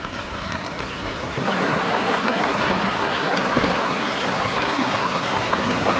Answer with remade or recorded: remade